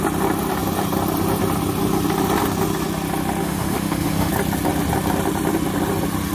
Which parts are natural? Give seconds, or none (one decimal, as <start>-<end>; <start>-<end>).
0.0-3.4; 4.3-6.3